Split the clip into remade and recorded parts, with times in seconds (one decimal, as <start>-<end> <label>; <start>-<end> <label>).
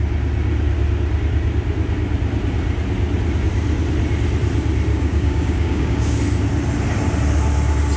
0.0-4.9 recorded; 4.9-6.2 remade; 6.2-8.0 recorded